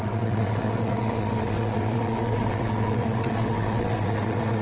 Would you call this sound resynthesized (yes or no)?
yes